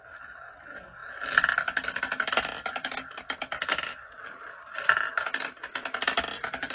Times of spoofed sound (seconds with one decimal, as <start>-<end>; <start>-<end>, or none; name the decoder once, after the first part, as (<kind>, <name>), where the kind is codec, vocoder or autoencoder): 0.0-1.0 (vocoder, BigVGAN v2); 2.0-5.2; 6.1-6.7